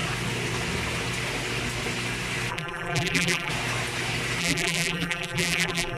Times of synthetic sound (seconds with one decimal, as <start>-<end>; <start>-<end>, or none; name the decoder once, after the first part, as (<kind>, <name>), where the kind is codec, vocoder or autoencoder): 2.5-3.5 (vocoder, BigVGAN v2); 4.4-6.0